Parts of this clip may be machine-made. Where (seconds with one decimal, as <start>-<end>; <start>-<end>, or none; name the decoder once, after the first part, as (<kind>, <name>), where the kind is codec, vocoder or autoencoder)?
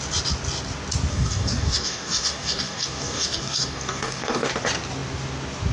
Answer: 1.1-4.5 (codec, DAC)